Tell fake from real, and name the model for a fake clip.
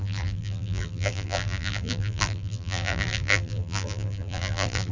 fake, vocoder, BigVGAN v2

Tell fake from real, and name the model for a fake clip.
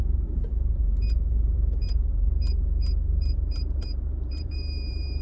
fake, vocoder, BigVGAN v2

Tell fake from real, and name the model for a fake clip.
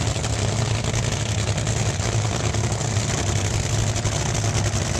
real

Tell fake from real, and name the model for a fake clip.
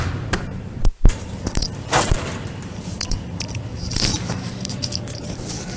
fake, vocoder, BigVGAN v2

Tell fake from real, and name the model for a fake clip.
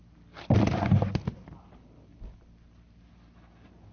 fake, vocoder, BigVGAN v2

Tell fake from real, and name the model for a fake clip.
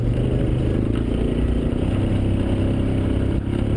real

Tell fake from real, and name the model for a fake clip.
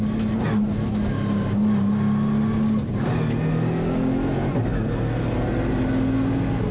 real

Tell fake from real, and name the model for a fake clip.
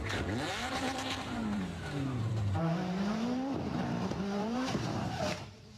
fake, vocoder, BigVGAN v2